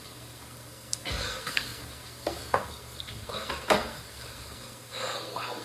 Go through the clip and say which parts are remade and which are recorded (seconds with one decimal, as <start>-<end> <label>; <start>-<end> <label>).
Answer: 0.0-5.6 remade